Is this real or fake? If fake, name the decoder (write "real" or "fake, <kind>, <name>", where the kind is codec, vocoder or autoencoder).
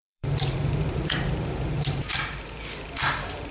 fake, vocoder, BigVGAN v2